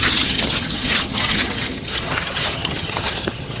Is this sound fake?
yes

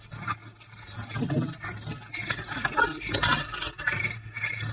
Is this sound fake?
no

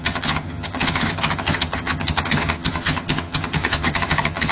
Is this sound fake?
yes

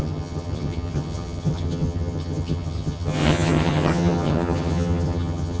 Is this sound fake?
yes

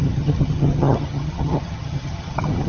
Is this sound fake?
yes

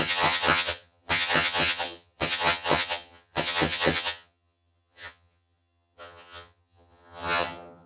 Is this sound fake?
yes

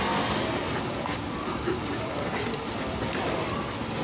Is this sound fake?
no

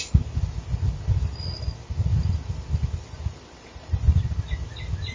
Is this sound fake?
no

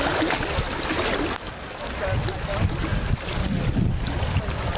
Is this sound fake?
no